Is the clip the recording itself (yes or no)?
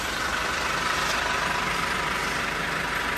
yes